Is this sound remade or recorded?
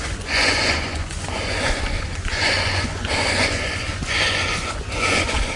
remade